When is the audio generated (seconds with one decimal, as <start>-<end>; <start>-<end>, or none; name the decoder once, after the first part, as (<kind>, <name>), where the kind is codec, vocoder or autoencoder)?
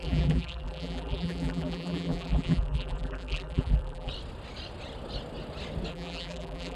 0.0-4.1 (vocoder, BigVGAN v2); 5.9-6.8